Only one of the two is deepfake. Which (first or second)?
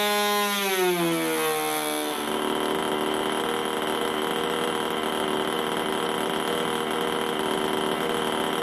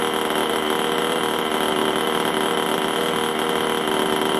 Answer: second